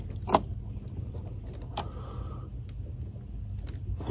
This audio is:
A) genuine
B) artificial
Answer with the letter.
A